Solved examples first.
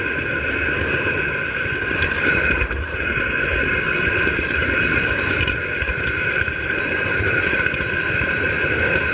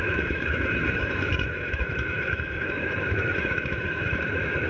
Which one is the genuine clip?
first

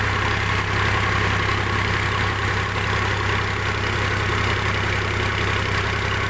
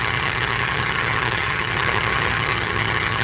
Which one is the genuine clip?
first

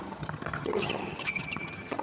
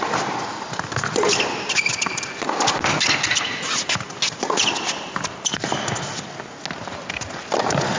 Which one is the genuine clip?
second